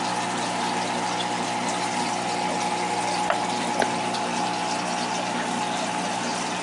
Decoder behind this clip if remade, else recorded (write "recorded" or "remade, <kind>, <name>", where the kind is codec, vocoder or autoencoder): recorded